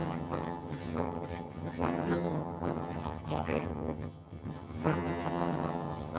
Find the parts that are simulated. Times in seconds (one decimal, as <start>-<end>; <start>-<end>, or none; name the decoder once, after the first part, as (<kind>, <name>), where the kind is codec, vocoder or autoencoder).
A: 0.0-6.2 (vocoder, HiFi-GAN)